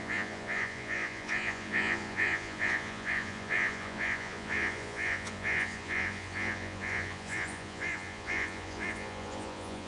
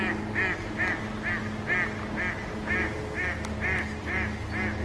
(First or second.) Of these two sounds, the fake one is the first